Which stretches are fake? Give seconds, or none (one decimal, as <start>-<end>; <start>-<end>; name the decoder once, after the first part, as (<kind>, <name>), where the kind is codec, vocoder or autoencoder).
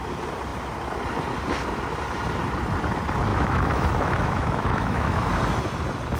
3.3-5.3 (autoencoder, DAC-VAE)